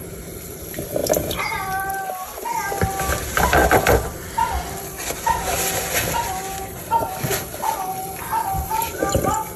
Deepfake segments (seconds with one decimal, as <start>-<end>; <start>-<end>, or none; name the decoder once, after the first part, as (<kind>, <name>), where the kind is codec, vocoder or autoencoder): 1.0-1.9 (vocoder, BigVGAN v2); 6.6-7.4